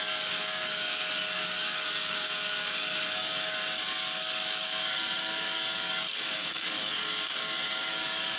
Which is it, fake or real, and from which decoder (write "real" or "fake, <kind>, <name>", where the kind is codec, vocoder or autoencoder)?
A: fake, codec, DAC